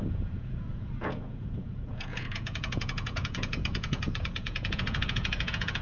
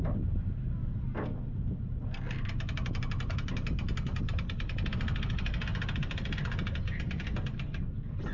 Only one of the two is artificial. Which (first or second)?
first